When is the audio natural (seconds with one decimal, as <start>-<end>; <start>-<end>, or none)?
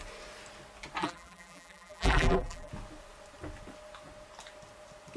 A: 0.0-1.0; 2.7-5.2